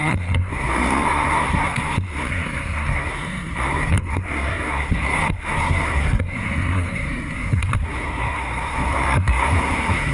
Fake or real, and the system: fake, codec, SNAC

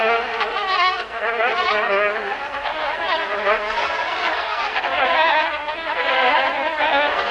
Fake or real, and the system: fake, codec, SNAC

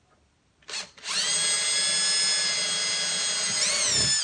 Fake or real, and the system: real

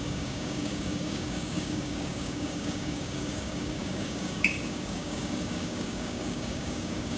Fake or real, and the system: fake, codec, DAC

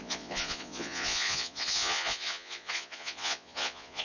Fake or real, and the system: fake, vocoder, Vocos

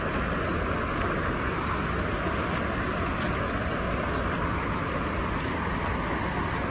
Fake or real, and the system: real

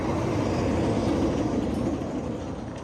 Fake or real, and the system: real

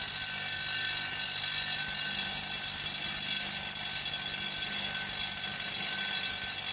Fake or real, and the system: real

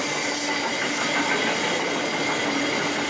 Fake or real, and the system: real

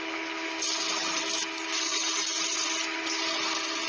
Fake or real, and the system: real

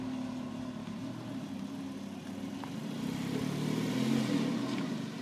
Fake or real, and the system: real